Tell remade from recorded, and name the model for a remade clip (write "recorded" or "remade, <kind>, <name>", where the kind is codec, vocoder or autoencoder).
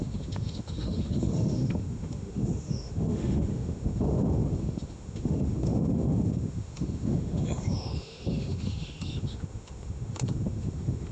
remade, autoencoder, DAC-VAE